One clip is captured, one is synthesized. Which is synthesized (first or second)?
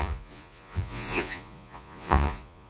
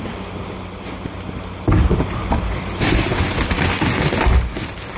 first